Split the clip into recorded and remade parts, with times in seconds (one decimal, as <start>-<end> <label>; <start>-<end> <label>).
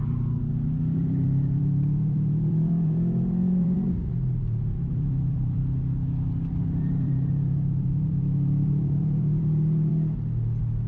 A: 0.0-5.6 remade; 5.6-6.5 recorded; 6.5-9.9 remade; 9.9-10.9 recorded